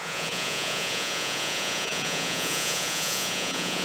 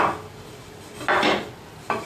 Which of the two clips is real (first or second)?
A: second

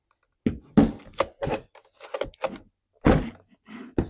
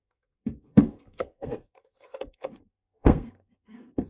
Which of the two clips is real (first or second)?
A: first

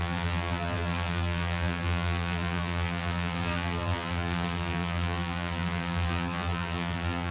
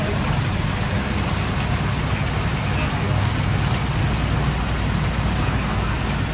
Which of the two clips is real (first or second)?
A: second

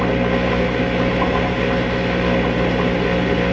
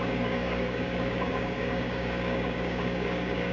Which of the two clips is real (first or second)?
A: first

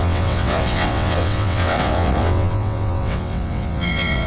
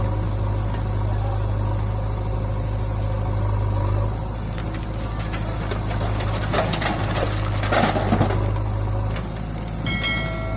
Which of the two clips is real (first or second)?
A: second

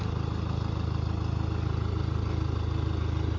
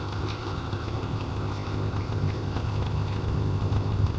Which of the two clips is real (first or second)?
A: first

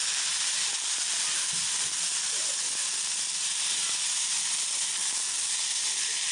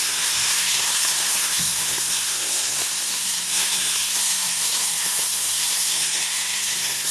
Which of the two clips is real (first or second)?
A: first